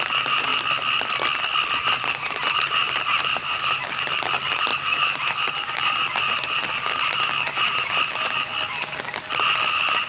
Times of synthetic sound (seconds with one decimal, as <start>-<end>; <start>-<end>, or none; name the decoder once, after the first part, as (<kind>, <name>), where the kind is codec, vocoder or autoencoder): 0.0-0.5 (vocoder, BigVGAN v2); 2.0-8.5; 9.3-10.1